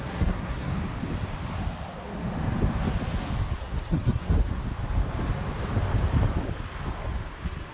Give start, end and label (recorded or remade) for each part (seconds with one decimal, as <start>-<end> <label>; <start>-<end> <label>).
0.0-0.7 remade; 0.7-3.6 recorded; 3.6-4.6 remade; 4.6-7.7 recorded

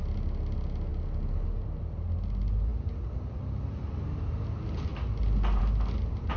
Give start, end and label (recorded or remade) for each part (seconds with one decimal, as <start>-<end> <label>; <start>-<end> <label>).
0.0-6.4 recorded